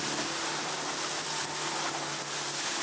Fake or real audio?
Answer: real